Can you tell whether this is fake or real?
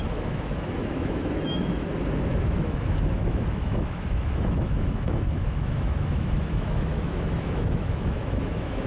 fake